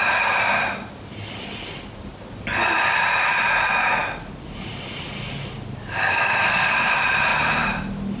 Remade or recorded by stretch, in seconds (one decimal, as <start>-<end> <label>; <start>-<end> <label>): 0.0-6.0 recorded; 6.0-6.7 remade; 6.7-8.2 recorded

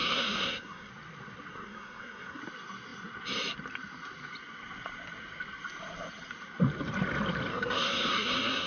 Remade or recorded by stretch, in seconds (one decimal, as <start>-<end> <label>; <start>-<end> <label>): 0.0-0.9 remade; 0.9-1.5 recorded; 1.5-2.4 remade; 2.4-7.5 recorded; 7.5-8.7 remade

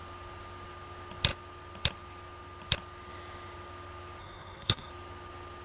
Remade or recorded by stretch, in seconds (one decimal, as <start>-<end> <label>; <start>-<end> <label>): 0.0-4.2 recorded; 4.2-4.9 remade; 4.9-5.6 recorded

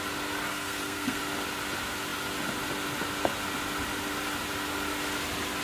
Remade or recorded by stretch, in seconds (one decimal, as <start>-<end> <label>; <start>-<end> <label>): 0.0-0.5 recorded; 0.5-1.2 remade; 1.2-5.6 recorded